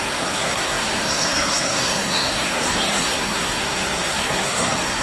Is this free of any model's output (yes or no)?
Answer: no